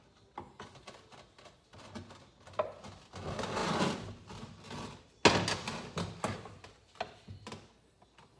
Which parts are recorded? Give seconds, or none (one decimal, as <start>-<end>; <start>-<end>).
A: 0.0-8.4